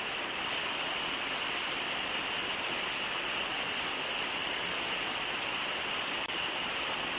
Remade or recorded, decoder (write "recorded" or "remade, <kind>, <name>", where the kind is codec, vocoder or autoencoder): recorded